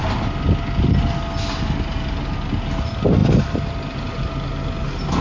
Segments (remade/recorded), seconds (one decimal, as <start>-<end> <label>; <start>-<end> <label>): 0.0-5.2 recorded